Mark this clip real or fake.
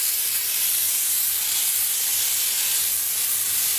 real